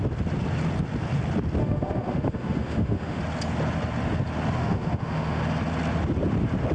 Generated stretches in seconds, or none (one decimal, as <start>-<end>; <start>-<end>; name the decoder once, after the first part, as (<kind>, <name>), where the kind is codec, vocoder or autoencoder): 1.6-3.2 (autoencoder, DAC-VAE); 4.6-5.4